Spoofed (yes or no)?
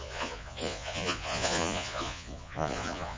yes